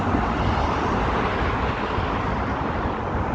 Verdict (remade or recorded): recorded